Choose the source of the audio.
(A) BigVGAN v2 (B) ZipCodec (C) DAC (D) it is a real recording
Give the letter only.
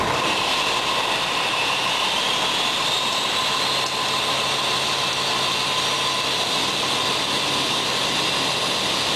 D